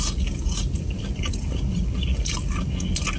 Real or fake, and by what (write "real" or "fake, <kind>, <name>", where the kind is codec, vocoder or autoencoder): real